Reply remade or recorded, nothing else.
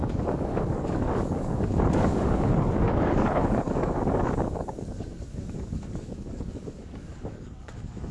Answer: remade